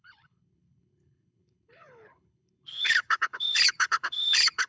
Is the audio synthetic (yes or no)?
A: yes